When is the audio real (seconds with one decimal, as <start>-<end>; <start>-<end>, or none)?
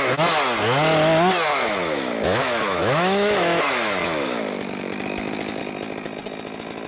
0.0-1.5; 5.6-6.9